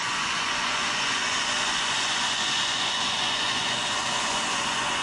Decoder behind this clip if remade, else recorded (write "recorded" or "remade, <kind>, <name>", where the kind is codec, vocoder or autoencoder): remade, vocoder, Vocos